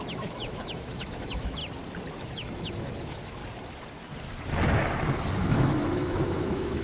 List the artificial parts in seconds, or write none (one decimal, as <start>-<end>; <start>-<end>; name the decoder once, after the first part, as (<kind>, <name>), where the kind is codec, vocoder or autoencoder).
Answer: 0.0-1.6 (autoencoder, DAC-VAE); 2.2-3.4; 5.4-6.8